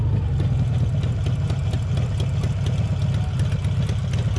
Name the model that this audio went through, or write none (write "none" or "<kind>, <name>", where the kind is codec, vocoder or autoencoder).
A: none